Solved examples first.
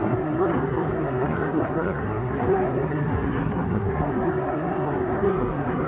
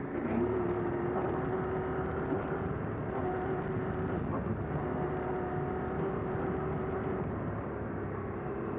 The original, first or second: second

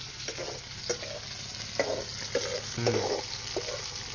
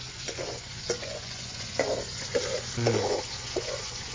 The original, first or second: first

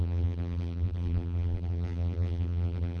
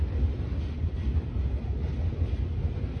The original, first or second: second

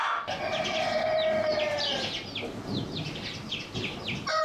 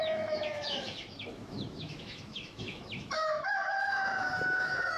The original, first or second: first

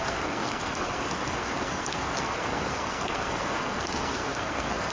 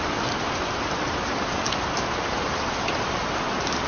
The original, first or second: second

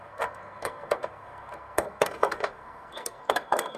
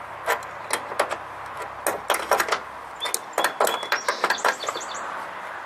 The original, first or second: second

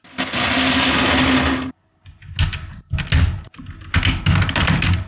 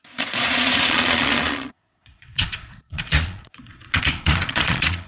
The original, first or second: first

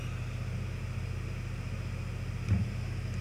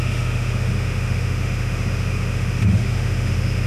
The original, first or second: first